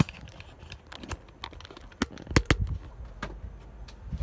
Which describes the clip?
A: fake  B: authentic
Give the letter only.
B